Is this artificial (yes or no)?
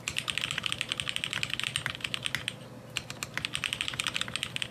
no